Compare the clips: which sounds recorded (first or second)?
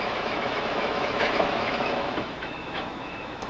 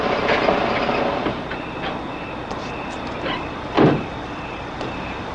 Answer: second